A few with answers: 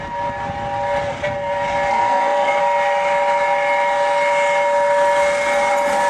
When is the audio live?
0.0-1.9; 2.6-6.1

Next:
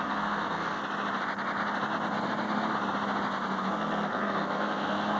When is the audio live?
0.8-3.7

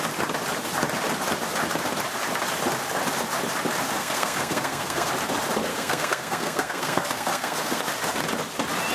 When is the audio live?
0.0-4.0; 5.1-5.7; 7.8-8.9

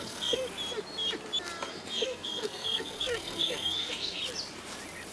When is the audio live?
0.4-1.7; 4.2-5.1

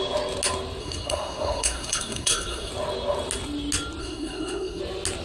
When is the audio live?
0.0-0.8; 2.7-4.0; 4.8-5.2

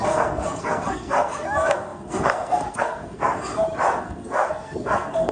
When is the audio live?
3.5-4.0